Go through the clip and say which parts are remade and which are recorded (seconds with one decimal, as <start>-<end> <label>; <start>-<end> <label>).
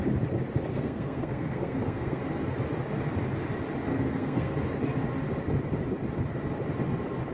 0.0-0.7 recorded; 0.7-2.2 remade; 2.2-3.9 recorded; 3.9-4.6 remade; 4.6-7.3 recorded